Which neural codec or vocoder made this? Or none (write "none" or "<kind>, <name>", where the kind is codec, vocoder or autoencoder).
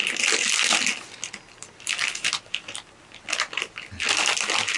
none